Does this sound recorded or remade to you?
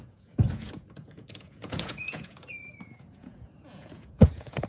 remade